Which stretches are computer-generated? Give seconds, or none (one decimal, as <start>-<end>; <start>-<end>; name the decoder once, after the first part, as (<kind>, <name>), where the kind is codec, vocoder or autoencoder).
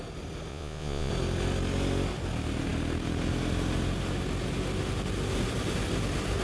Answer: 0.5-1.1 (vocoder, Vocos)